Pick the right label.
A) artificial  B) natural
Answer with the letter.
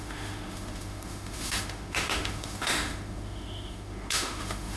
A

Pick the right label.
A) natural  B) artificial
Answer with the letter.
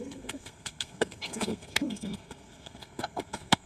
B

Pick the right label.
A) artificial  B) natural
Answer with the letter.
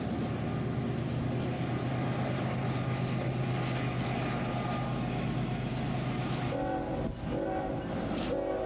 B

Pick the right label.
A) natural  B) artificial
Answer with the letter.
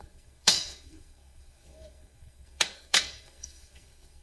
B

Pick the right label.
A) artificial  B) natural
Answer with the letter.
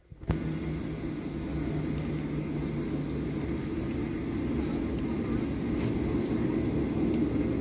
B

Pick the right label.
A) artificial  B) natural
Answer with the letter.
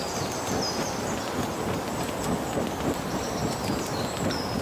B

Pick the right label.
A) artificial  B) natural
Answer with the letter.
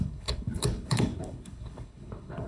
A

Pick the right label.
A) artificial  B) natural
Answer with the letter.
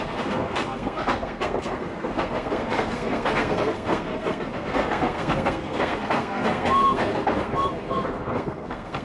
A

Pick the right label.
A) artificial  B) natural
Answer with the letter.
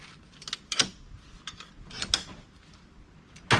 B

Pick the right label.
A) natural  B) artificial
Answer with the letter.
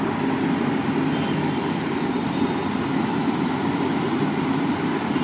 A